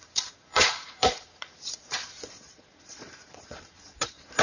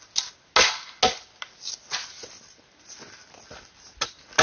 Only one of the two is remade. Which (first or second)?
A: first